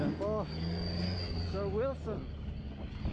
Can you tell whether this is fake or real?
real